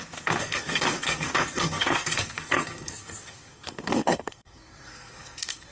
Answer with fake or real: fake